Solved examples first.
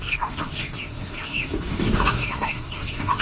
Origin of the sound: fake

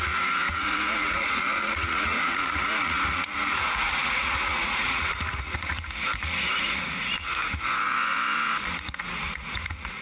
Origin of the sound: fake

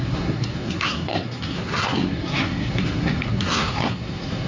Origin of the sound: fake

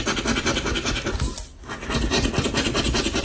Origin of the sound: real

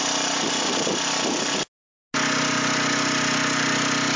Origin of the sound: real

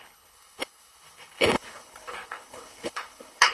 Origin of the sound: fake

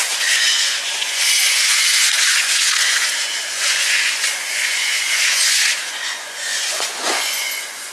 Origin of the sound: fake